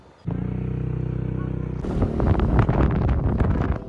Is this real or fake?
real